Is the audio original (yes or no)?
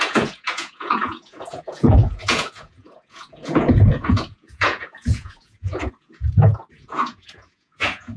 no